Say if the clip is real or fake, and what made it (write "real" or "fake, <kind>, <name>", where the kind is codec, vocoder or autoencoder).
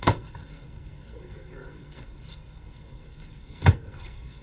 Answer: fake, codec, SNAC